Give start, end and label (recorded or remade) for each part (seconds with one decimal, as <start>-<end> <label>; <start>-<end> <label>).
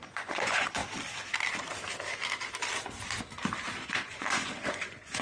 0.0-0.8 remade; 0.8-3.9 recorded; 3.9-5.2 remade